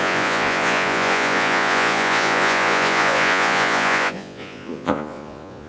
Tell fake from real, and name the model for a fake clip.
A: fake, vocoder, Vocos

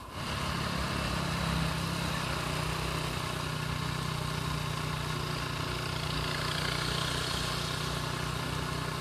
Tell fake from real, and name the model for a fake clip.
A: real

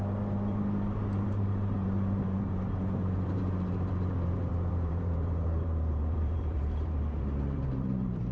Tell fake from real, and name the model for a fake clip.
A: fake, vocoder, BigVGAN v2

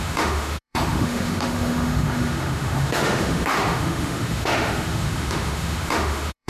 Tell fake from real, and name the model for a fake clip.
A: fake, autoencoder, DAC-VAE